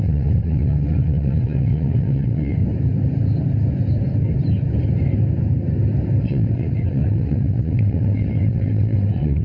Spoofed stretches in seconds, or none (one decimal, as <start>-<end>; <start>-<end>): 0.0-2.6; 6.2-9.4